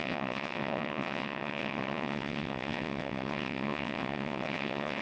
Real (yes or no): no